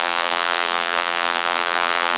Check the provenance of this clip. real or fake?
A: fake